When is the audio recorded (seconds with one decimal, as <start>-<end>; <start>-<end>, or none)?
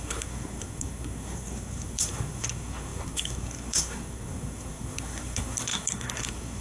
none